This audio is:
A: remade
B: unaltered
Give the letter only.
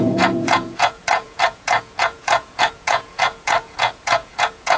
A